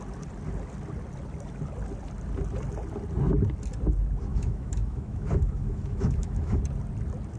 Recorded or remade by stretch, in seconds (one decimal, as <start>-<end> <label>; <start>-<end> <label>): 0.0-4.3 recorded; 4.3-6.6 remade; 6.6-7.4 recorded